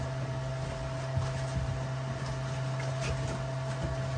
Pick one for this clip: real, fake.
real